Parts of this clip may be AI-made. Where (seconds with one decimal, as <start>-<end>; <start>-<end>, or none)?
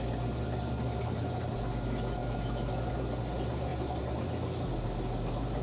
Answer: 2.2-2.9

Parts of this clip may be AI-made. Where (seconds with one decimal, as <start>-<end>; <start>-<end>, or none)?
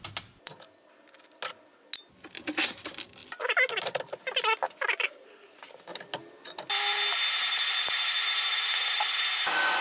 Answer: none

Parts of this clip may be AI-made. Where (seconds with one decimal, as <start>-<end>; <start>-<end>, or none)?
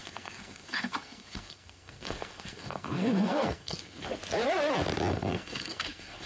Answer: 0.0-4.2; 5.1-6.3